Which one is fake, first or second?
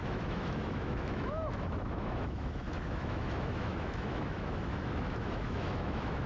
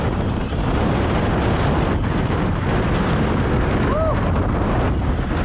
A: first